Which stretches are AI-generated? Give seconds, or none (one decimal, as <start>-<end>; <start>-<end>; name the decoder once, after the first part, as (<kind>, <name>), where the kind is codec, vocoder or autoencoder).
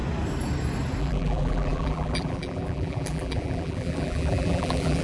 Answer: 1.0-5.0 (vocoder, BigVGAN v2)